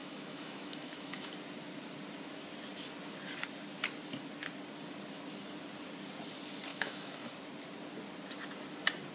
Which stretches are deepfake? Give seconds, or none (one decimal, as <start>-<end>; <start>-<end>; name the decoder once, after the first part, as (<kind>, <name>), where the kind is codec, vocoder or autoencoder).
0.0-1.3 (autoencoder, DAC-VAE); 6.7-7.3